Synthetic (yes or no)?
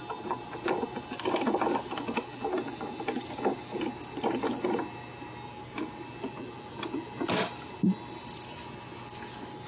no